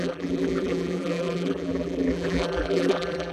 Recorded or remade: remade